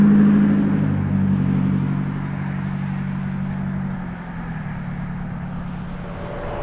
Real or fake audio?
real